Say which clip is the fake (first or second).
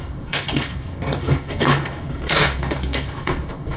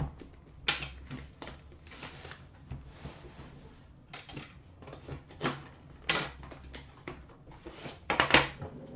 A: first